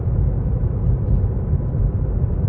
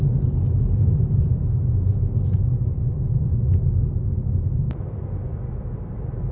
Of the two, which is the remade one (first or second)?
first